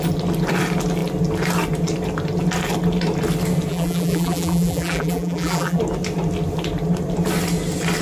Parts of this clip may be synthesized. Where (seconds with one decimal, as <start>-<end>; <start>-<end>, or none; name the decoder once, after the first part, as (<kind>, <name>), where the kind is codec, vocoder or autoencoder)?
3.7-5.8 (vocoder, BigVGAN v2)